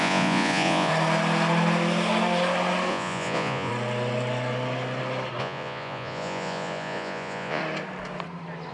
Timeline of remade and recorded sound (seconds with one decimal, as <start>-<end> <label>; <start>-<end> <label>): 0.0-0.9 remade; 0.9-2.9 recorded; 2.9-3.7 remade; 3.7-5.4 recorded; 5.4-7.6 remade; 7.6-8.7 recorded